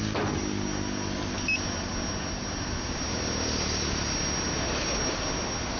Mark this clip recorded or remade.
recorded